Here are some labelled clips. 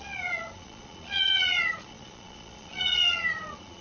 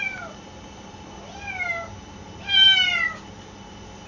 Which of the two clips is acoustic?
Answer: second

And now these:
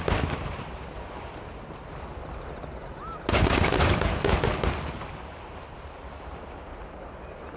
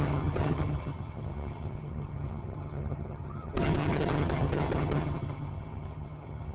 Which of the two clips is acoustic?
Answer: first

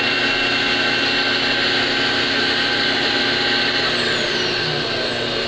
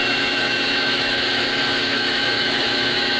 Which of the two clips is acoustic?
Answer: first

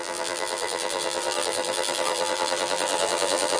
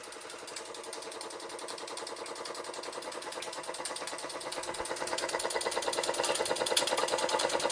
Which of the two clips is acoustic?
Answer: second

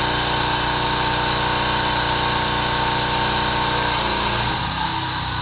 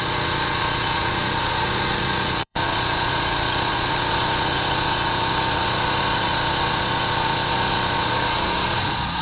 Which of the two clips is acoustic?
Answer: first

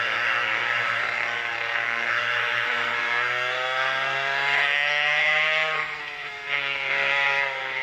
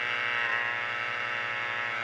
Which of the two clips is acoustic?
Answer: second